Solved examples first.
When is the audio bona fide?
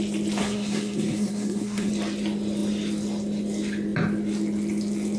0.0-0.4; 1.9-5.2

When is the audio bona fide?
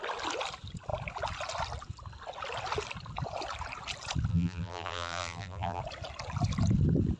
0.0-4.3; 5.8-7.2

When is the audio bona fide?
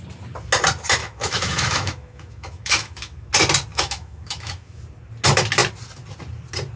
0.0-1.0; 3.3-3.7; 4.8-6.8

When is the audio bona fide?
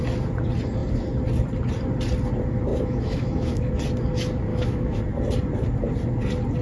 0.0-2.7; 3.7-4.5; 5.0-6.6